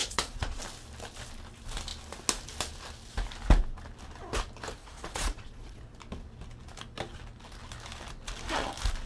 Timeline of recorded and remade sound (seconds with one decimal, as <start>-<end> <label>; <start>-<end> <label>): 0.0-0.6 remade; 0.6-4.8 recorded; 4.8-5.8 remade; 5.8-9.1 recorded